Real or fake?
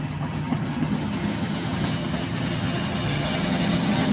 fake